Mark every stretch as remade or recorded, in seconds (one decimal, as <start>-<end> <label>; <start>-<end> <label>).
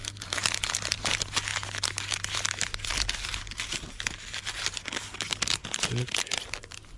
0.0-0.7 remade; 0.7-7.0 recorded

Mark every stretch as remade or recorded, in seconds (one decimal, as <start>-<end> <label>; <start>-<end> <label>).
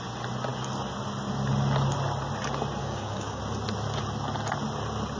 0.0-2.8 recorded; 2.8-3.4 remade; 3.4-5.2 recorded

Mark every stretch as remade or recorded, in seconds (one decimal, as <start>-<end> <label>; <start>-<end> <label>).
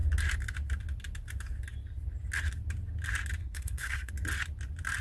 0.0-3.4 recorded; 3.4-4.1 remade; 4.1-5.0 recorded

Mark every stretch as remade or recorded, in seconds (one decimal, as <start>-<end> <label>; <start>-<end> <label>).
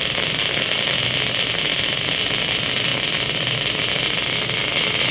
0.0-1.7 recorded; 1.7-2.3 remade; 2.3-5.1 recorded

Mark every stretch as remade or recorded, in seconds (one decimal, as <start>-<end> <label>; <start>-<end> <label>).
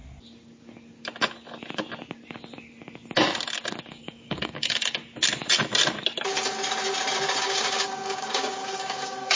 0.0-3.9 recorded; 3.9-5.0 remade; 5.0-7.4 recorded; 7.4-9.4 remade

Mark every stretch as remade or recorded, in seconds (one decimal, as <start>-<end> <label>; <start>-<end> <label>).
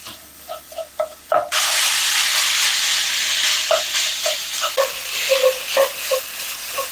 0.0-2.3 remade; 2.3-6.9 recorded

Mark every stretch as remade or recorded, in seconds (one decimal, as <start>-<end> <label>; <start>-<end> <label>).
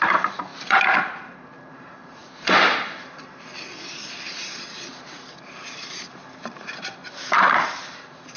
0.0-8.4 remade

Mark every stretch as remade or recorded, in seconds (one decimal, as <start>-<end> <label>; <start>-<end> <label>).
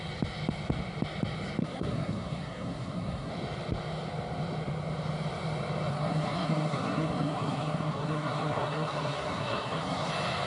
0.0-1.6 recorded; 1.6-3.3 remade; 3.3-5.9 recorded; 5.9-10.1 remade; 10.1-10.5 recorded